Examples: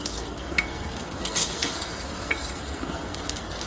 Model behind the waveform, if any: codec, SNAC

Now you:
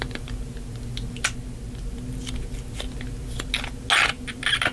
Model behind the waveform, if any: none